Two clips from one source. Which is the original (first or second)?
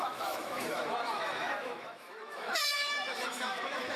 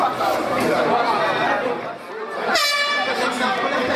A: second